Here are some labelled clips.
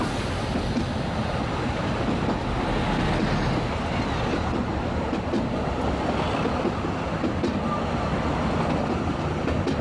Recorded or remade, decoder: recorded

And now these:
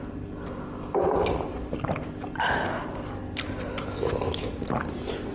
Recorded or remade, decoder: recorded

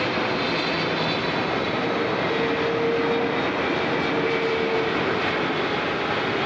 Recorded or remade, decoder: recorded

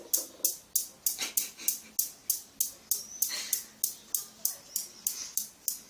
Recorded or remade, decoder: recorded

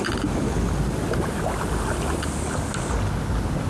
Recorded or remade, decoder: recorded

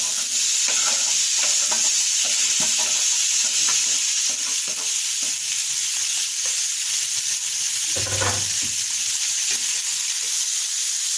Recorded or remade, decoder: recorded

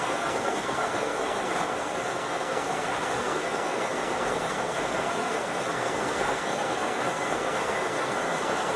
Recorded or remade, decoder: remade, codec, SNAC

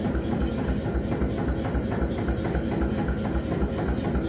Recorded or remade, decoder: recorded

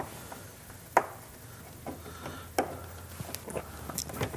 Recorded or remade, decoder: recorded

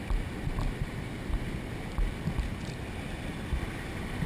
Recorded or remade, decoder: recorded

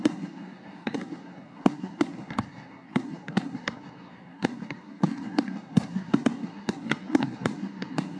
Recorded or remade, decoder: remade, codec, SNAC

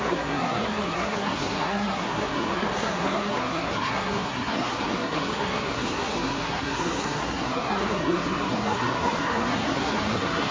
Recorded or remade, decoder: remade, codec, SNAC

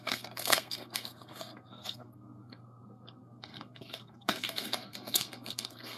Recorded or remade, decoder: remade, codec, SNAC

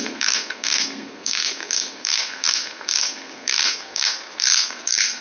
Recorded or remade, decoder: remade, codec, SNAC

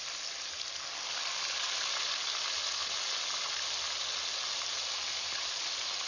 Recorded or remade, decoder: recorded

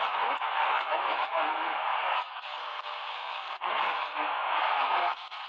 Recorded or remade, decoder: remade, codec, SNAC